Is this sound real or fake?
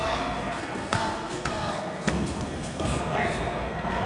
fake